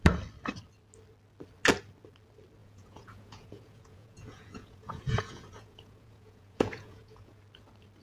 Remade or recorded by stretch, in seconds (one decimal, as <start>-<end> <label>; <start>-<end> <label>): 0.0-2.6 recorded; 2.6-7.4 remade; 7.4-8.0 recorded